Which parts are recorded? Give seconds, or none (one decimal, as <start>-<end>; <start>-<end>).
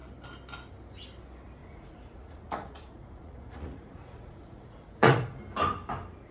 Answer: 0.0-1.6; 5.4-6.3